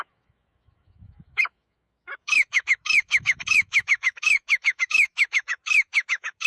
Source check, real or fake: fake